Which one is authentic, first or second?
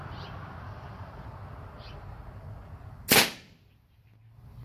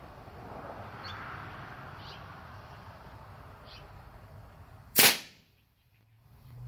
first